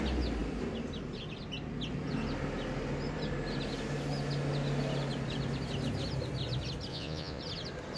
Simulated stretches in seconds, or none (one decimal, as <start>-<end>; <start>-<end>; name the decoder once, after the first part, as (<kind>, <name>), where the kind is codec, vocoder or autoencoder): 6.9-7.4 (vocoder, Vocos)